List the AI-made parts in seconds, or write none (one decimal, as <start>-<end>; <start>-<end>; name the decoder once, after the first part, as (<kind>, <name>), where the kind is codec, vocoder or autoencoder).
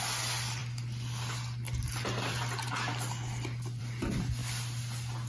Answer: none